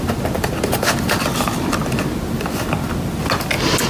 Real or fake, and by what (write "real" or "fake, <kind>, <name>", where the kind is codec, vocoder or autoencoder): real